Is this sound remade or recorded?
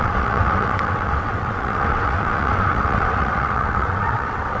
remade